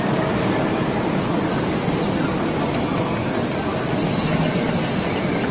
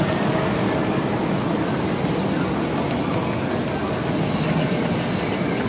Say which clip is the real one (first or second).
second